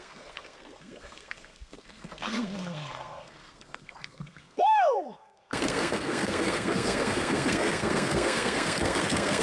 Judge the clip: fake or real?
fake